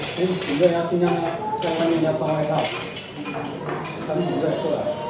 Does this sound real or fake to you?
real